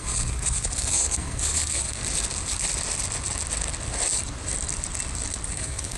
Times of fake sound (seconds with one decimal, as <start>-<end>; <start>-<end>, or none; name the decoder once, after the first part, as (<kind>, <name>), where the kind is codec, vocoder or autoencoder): 0.0-2.0 (codec, SNAC); 5.5-6.0